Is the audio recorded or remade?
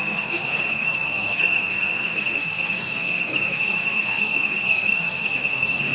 remade